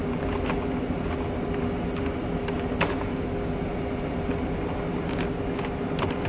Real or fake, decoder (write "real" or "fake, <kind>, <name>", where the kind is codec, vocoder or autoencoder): real